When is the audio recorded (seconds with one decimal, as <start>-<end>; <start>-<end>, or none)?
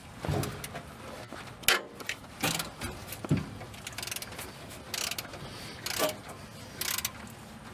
0.0-7.7